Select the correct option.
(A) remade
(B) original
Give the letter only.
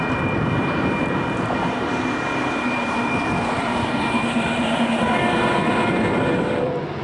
A